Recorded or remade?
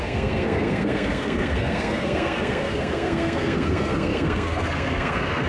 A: remade